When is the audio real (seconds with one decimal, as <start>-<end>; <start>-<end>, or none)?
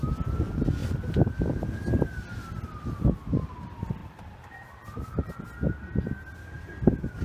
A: 0.0-7.2